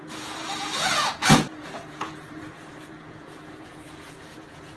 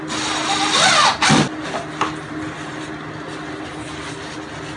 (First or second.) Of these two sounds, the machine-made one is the first